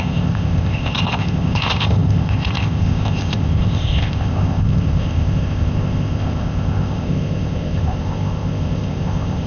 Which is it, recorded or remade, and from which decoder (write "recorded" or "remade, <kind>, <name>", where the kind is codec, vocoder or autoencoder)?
remade, codec, ZipCodec